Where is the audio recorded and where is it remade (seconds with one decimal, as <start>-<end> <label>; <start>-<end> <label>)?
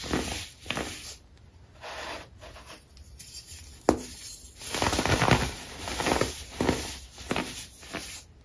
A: 0.0-8.4 recorded